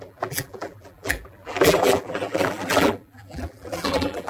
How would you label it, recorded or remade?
remade